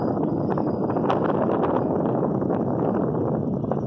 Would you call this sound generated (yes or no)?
no